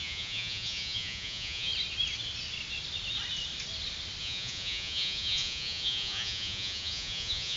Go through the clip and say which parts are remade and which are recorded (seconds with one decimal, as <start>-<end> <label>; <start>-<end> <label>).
0.0-1.7 remade; 1.7-4.2 recorded; 4.2-7.6 remade